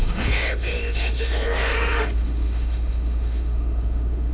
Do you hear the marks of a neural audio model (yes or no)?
yes